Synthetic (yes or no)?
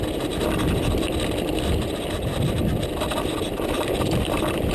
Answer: no